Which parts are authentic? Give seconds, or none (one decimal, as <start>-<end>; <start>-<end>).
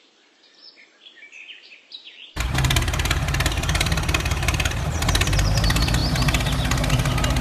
6.0-6.9